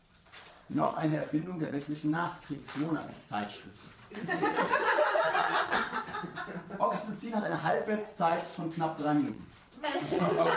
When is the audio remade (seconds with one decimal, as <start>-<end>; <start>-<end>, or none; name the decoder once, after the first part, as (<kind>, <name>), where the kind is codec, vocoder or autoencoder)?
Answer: 0.0-5.8 (vocoder, WaveNeXt); 7.4-8.5; 9.3-10.6